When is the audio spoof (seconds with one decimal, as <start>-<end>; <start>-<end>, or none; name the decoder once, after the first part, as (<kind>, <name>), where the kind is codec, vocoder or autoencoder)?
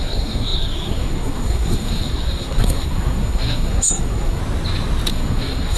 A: 0.0-4.4 (codec, SNAC); 5.1-5.8